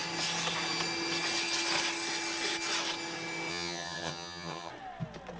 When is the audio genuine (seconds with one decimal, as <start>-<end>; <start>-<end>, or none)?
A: 0.0-3.5; 4.7-5.4